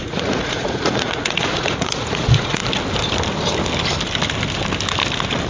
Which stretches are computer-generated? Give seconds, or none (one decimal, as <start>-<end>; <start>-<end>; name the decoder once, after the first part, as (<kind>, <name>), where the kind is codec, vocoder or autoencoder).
0.0-2.6 (vocoder, Vocos)